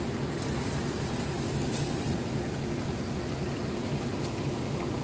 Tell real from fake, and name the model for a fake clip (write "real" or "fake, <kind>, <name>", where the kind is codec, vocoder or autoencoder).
real